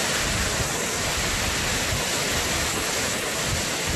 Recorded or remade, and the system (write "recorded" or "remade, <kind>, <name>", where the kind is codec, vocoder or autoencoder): recorded